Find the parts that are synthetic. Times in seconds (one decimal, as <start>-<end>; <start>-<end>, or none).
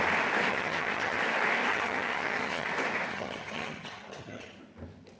0.5-1.2; 1.7-2.7; 3.1-4.6